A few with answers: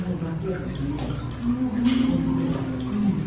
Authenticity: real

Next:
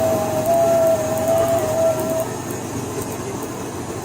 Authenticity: real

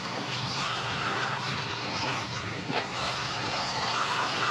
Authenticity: fake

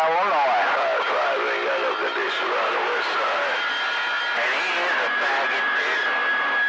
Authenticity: real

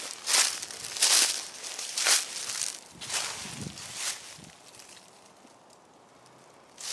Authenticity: real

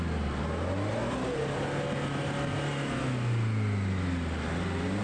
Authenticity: real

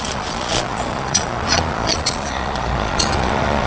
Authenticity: fake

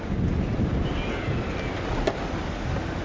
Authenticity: real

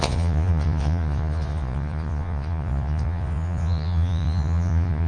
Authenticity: fake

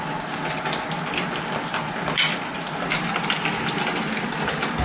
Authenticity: real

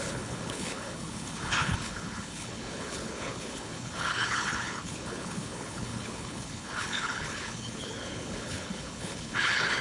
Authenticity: fake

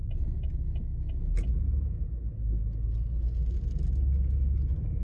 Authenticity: real